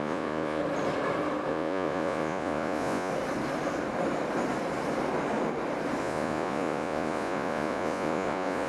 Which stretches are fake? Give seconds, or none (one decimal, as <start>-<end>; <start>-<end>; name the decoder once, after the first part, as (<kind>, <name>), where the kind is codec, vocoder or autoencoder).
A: 0.0-0.6 (vocoder, Vocos); 1.5-3.1; 6.0-8.7